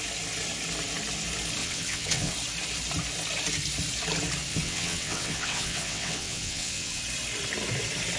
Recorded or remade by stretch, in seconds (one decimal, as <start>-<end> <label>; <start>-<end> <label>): 0.0-1.6 recorded; 1.6-2.3 remade; 2.3-4.5 recorded; 4.5-7.0 remade; 7.0-8.2 recorded